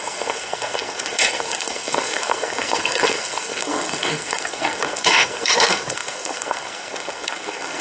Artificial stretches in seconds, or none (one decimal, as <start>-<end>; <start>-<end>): 0.0-7.8